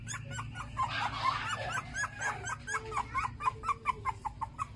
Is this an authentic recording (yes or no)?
yes